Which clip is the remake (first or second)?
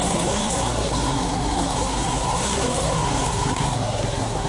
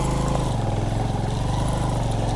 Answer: first